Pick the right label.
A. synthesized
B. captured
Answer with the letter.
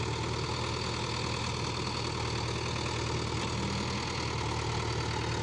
B